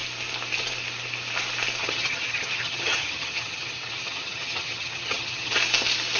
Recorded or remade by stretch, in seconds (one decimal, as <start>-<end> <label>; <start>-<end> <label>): 0.0-1.8 recorded; 1.8-5.5 remade; 5.5-6.2 recorded